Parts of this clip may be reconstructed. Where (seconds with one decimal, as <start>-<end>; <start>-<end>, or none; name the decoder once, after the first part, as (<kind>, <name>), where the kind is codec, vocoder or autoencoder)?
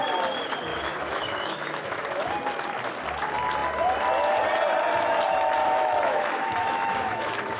0.7-2.3 (autoencoder, DAC-VAE); 5.6-7.6